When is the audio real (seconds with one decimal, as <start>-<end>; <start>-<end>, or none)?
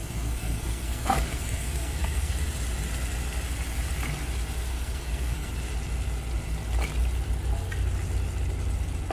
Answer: 2.3-4.7; 5.5-9.1